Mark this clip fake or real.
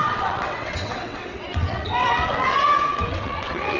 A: fake